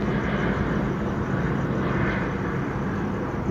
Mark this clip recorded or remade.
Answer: recorded